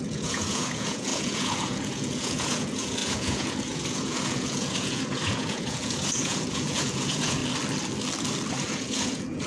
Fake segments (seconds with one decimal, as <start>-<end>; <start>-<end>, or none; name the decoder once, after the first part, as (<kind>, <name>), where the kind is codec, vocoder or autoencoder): 0.0-7.4 (vocoder, Vocos); 8.5-9.5